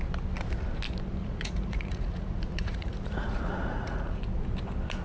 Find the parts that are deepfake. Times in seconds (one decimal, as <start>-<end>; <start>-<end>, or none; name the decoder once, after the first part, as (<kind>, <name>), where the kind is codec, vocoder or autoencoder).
1.2-4.2 (vocoder, Vocos)